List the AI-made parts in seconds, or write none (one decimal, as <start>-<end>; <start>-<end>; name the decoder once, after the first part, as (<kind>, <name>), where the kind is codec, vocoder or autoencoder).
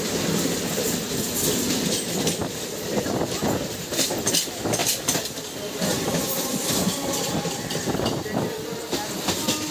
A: 2.4-3.5 (vocoder, BigVGAN v2); 4.8-7.5